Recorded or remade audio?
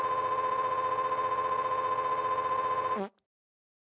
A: recorded